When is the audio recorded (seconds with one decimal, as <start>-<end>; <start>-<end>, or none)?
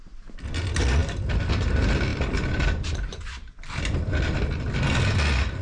0.0-5.6